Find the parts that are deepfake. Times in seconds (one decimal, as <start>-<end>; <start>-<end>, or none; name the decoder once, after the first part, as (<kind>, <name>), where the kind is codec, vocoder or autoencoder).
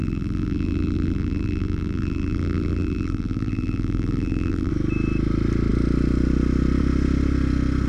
0.0-4.7 (vocoder, BigVGAN v2)